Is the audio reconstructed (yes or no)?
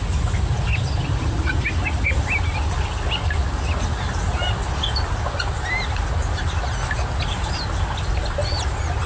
no